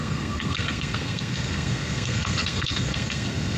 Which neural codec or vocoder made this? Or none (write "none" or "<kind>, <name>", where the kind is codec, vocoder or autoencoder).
codec, SNAC